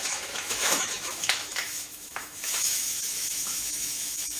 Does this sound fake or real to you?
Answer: fake